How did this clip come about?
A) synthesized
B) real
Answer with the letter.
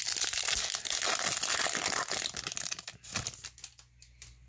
B